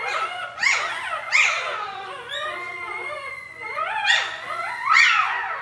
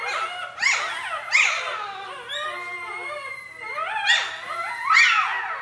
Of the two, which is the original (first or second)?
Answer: second